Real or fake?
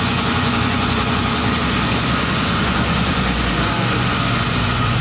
fake